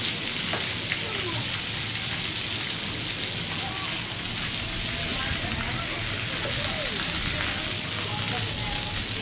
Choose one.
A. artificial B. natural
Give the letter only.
B